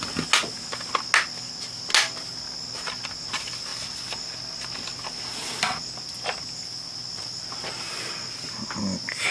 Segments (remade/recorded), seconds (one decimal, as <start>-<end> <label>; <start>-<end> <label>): 0.0-9.3 recorded